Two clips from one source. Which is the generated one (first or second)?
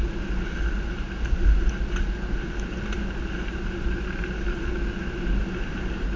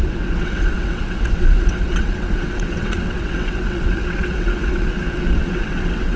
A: second